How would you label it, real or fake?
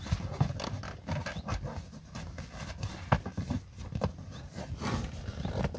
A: real